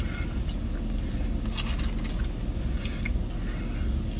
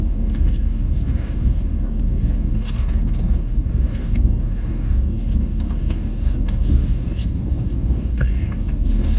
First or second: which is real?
first